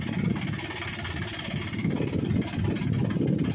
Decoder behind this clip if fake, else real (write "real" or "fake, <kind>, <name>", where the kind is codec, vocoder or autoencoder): fake, vocoder, BigVGAN v2